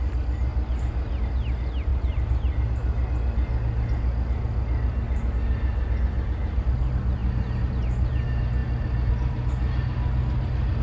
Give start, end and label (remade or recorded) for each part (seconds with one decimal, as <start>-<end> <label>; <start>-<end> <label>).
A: 0.0-10.8 recorded